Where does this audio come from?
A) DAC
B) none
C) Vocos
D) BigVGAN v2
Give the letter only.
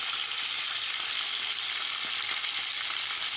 B